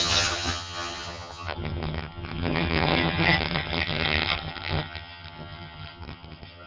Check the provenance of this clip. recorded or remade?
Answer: remade